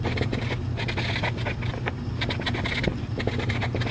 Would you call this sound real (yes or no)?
yes